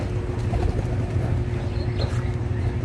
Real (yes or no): yes